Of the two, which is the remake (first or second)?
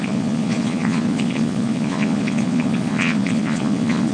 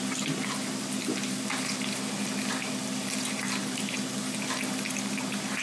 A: first